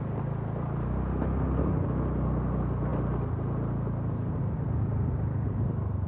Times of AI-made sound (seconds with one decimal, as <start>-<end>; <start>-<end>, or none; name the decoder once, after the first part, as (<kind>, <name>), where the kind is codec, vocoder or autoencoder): none